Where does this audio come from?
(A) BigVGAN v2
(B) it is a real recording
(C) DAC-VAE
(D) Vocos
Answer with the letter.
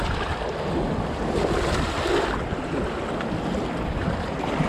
B